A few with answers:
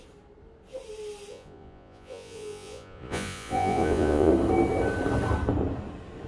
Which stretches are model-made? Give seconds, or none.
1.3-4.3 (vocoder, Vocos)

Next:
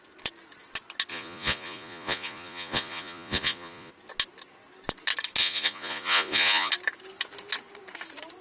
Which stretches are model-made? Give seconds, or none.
1.1-3.9 (vocoder, Vocos); 5.4-6.7

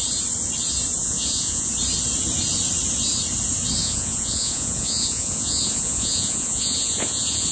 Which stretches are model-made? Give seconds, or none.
1.0-1.7 (vocoder, Vocos); 3.8-7.5

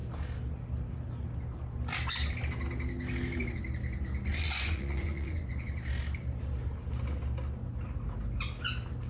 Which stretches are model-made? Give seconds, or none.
4.3-5.4 (vocoder, Vocos)

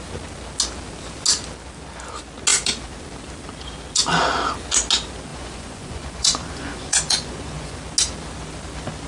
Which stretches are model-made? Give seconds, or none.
5.3-7.8 (vocoder, Vocos)

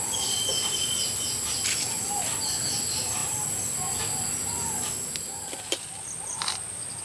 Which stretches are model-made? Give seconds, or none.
none